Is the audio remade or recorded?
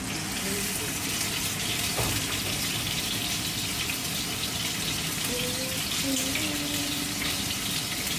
recorded